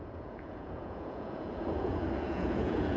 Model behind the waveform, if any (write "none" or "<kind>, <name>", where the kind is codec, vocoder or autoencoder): vocoder, Vocos